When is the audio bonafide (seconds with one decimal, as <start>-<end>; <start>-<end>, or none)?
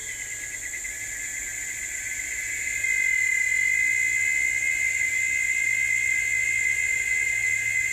0.0-7.9